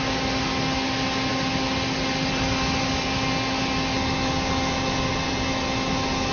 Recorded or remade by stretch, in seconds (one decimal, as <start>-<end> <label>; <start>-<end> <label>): 0.0-6.3 recorded